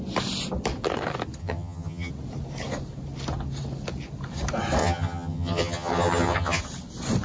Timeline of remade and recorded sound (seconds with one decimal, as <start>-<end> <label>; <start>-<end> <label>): 0.0-1.4 recorded; 1.4-2.1 remade; 2.1-4.8 recorded; 4.8-6.6 remade; 6.6-7.2 recorded